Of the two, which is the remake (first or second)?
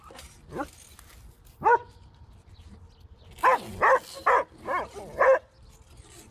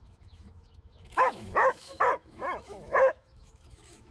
second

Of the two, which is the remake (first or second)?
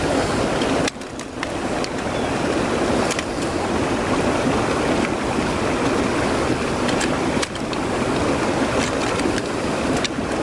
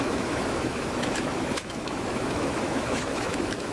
second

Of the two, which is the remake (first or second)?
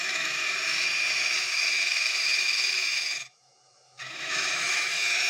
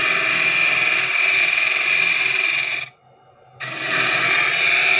first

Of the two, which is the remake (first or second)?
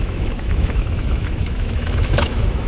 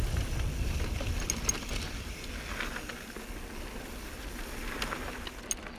first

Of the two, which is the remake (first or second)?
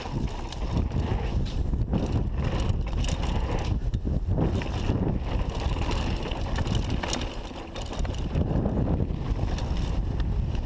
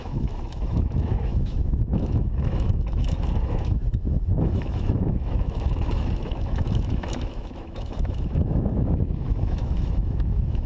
second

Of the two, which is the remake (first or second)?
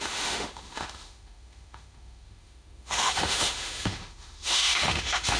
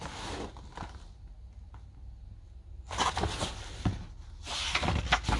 first